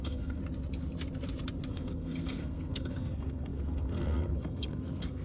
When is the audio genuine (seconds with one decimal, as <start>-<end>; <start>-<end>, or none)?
0.4-1.7